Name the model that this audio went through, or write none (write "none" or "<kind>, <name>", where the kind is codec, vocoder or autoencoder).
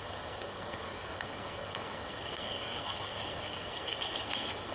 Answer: codec, SNAC